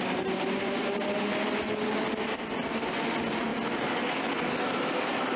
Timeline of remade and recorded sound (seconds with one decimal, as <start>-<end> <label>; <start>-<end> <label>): 0.0-5.4 recorded